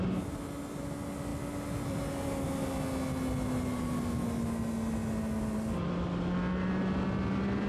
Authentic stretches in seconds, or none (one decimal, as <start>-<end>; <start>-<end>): 0.0-7.7